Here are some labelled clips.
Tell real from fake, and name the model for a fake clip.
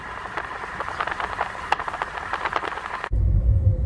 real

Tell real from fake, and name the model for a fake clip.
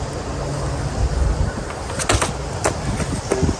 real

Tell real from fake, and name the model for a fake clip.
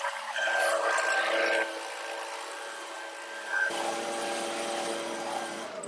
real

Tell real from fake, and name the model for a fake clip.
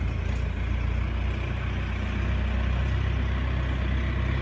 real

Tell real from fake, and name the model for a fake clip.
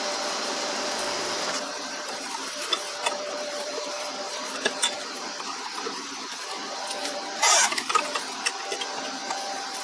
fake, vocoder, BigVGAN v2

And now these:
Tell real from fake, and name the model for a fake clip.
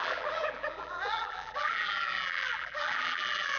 fake, vocoder, BigVGAN v2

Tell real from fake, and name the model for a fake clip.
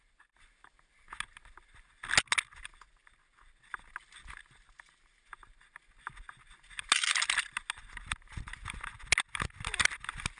real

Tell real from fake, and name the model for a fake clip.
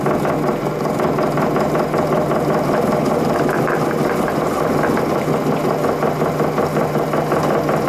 real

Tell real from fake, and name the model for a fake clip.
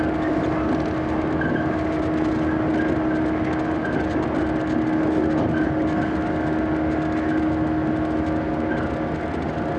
real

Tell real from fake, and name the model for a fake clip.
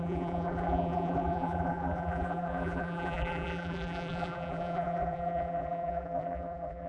fake, vocoder, BigVGAN v2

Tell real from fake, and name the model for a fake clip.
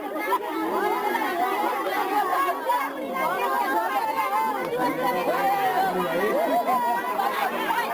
real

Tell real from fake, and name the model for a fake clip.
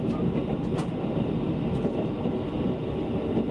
real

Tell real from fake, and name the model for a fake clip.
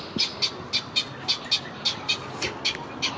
real